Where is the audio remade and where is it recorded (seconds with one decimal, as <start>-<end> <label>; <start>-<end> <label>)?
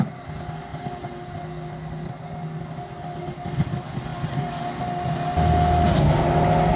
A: 0.0-6.8 recorded